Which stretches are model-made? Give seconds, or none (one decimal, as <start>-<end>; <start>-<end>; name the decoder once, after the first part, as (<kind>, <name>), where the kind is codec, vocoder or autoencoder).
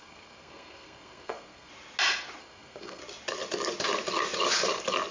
0.0-1.7 (codec, SNAC); 2.4-3.0